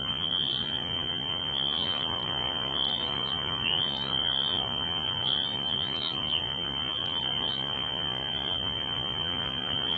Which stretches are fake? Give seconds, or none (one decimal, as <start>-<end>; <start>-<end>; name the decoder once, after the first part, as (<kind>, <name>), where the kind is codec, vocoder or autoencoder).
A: 0.0-10.0 (vocoder, Vocos)